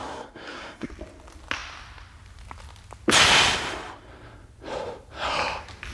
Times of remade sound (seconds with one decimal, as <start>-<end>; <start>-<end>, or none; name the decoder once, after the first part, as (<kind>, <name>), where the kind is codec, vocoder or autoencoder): 0.0-0.9 (codec, SNAC)